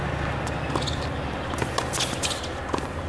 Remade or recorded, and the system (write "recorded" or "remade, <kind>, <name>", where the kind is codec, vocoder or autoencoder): recorded